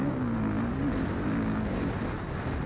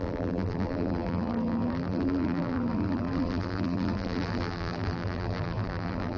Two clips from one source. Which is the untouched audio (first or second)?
first